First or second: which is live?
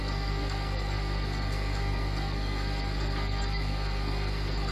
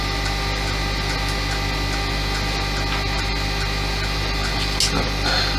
second